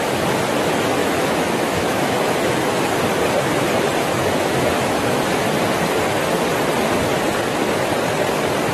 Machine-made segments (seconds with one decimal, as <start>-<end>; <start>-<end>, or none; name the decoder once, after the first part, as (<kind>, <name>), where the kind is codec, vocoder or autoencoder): 1.0-3.0 (autoencoder, DAC-VAE); 4.0-5.5